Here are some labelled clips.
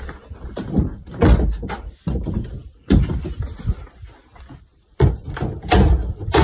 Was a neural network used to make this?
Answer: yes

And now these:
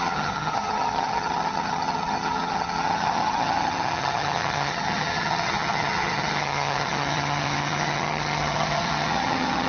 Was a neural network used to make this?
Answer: yes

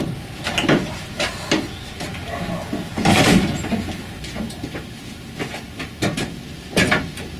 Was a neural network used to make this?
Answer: no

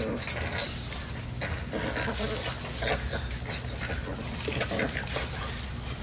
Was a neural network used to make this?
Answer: no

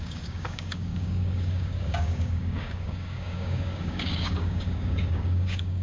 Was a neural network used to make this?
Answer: yes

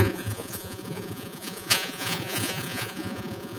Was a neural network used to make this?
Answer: yes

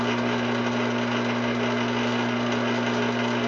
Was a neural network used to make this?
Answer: no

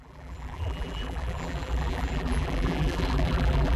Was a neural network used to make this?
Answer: yes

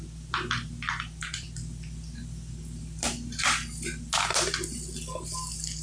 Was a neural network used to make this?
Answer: no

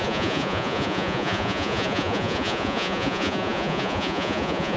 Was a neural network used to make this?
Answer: yes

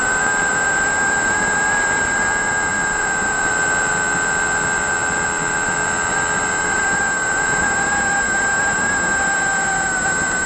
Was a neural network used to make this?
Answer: no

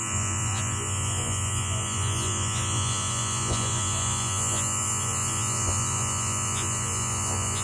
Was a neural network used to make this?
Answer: yes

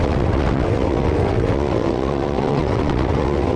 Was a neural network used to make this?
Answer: yes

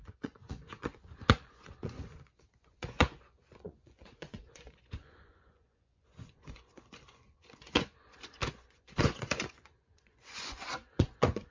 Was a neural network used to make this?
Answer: yes